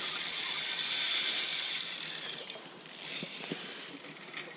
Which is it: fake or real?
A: real